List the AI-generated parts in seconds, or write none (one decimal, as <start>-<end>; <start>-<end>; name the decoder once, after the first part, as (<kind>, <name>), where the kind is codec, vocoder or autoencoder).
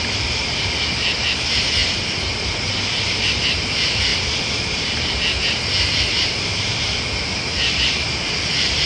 0.0-1.8 (vocoder, BigVGAN v2); 2.5-4.1; 6.0-8.9